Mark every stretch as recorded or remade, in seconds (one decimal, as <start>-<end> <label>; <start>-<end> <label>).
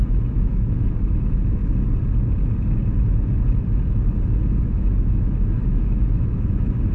0.0-1.6 remade; 1.6-4.6 recorded; 4.6-6.9 remade